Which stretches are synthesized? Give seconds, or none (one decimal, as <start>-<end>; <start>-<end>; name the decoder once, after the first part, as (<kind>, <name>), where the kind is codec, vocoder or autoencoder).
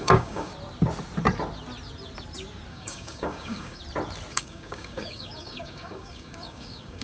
0.0-0.5 (codec, DAC); 2.7-3.8; 4.3-7.0